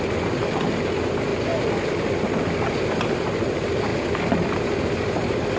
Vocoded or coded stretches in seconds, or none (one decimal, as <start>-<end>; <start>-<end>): none